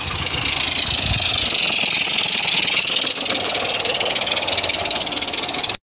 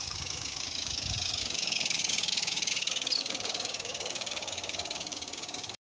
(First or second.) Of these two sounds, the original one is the first